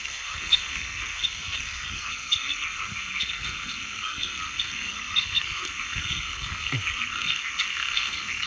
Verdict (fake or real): fake